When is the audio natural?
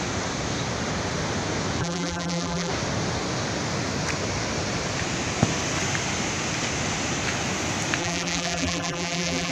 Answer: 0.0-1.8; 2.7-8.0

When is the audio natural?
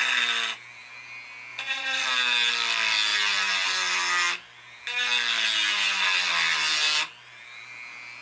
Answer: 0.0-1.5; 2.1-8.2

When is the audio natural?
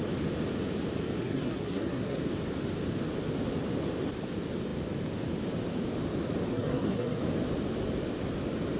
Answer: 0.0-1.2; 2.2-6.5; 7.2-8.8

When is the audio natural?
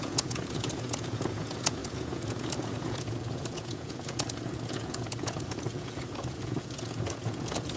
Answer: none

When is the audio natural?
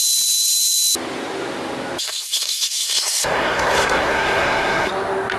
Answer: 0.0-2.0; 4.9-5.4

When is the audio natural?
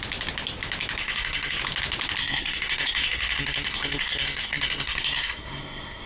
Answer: 0.0-1.0; 1.6-2.2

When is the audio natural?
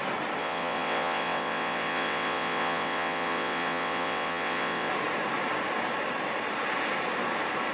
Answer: 0.0-0.4; 4.9-7.7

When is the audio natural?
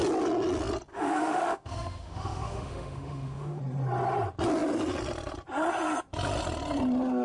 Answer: 0.0-0.9; 3.6-7.2